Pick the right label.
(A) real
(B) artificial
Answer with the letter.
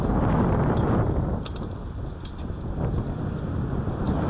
A